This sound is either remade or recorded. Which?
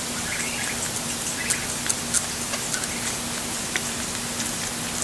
recorded